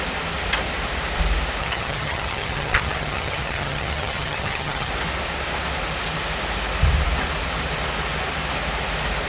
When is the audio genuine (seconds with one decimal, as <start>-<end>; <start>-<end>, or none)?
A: 0.0-1.6; 4.9-9.3